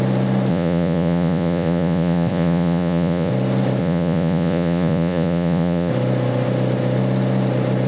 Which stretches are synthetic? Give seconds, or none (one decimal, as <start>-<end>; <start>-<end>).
0.5-3.3; 3.8-5.9